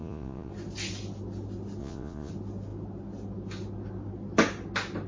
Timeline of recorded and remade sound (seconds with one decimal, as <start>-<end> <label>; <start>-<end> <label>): 0.0-0.5 remade; 0.5-1.8 recorded; 1.8-2.3 remade; 2.3-5.1 recorded